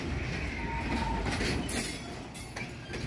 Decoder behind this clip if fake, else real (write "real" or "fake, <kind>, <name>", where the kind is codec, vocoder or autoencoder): real